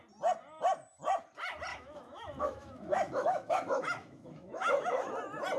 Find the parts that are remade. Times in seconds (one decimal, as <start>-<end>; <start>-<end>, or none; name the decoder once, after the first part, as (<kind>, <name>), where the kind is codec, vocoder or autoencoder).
1.7-5.1 (autoencoder, DAC-VAE)